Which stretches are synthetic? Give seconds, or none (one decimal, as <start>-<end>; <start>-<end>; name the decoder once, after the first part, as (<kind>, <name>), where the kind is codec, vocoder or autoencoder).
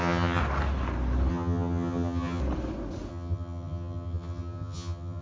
0.0-0.4 (vocoder, HiFi-GAN); 1.3-2.4; 3.1-5.2